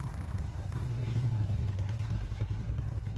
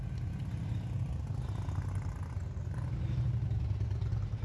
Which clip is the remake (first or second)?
first